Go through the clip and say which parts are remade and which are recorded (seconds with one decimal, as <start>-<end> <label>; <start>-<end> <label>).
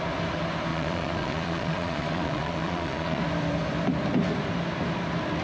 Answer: 0.0-0.7 recorded; 0.7-3.2 remade; 3.2-5.4 recorded